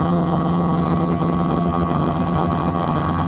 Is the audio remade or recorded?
remade